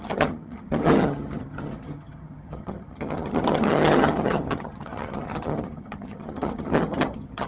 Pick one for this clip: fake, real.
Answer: fake